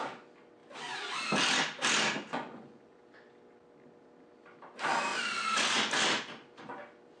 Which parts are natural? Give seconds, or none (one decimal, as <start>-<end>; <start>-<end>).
0.0-2.3; 3.0-5.1; 6.0-7.2